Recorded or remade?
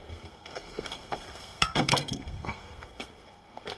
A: remade